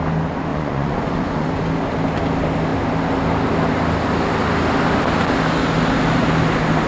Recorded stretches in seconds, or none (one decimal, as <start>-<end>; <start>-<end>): 0.0-0.5; 1.5-6.9